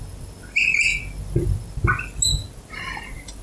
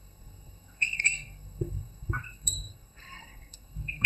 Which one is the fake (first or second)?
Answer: second